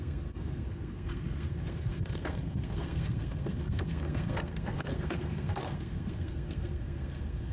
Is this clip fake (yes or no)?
yes